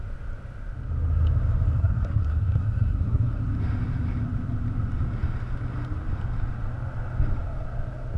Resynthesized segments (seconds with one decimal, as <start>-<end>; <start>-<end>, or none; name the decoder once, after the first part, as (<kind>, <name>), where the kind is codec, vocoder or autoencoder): 1.8-3.4 (codec, SNAC)